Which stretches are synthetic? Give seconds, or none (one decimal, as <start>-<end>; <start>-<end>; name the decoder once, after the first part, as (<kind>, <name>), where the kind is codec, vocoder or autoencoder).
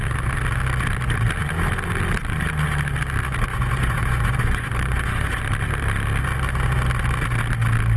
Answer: 3.5-5.4 (vocoder, Vocos)